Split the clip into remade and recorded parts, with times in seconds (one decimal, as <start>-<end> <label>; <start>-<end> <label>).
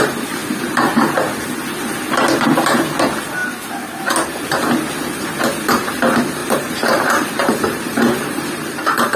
0.0-6.4 recorded; 6.4-9.2 remade